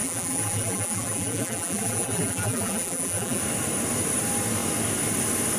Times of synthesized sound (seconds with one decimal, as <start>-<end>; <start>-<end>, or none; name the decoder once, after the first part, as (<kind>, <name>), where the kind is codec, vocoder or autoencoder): 0.0-3.4 (vocoder, BigVGAN v2)